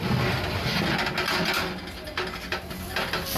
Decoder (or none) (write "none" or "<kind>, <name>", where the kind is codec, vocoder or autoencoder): none